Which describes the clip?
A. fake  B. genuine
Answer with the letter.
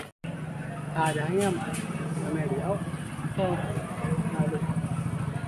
B